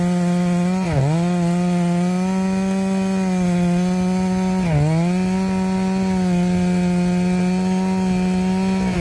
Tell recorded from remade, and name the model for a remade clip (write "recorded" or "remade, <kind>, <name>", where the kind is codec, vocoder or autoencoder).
recorded